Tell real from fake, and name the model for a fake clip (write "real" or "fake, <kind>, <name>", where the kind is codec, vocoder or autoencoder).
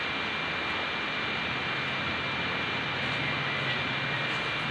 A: real